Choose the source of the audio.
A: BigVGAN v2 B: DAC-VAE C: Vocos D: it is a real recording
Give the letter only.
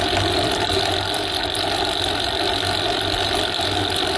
D